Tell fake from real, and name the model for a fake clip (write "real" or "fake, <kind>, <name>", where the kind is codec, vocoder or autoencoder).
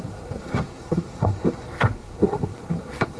fake, codec, SNAC